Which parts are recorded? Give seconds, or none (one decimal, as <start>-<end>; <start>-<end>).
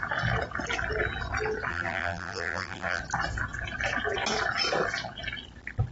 0.0-1.7; 3.0-5.9